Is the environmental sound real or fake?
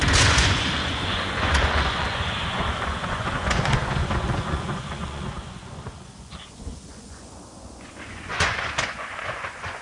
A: fake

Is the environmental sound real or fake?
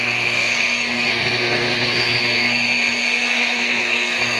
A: fake